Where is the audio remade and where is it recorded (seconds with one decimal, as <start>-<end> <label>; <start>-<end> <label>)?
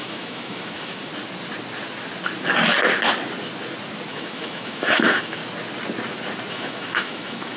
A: 0.0-1.1 remade; 1.1-4.1 recorded; 4.1-5.4 remade; 5.4-6.5 recorded; 6.5-7.6 remade